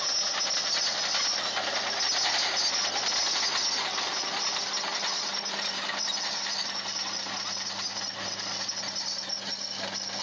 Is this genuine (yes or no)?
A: yes